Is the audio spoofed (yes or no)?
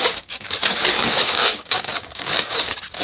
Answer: yes